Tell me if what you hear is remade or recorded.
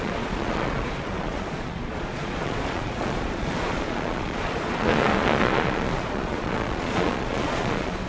remade